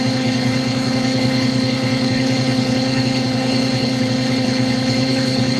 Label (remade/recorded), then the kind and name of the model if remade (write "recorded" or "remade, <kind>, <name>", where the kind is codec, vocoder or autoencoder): remade, codec, HILCodec